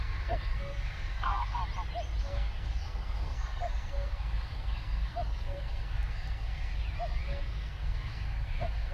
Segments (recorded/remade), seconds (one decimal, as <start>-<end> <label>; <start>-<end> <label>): 0.0-1.6 remade; 1.6-2.2 recorded; 2.2-6.7 remade; 6.7-7.2 recorded; 7.2-8.9 remade